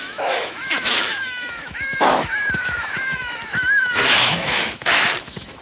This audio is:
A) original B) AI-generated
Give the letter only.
B